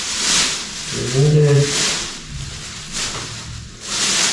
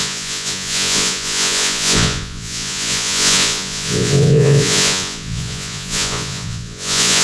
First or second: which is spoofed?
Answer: second